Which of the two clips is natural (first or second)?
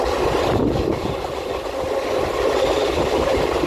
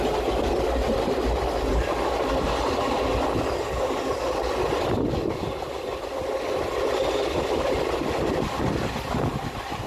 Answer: second